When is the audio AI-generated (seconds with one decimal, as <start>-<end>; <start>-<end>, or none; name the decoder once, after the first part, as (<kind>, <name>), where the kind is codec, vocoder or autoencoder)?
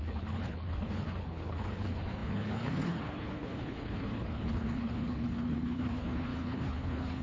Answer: 0.0-7.2 (codec, HILCodec)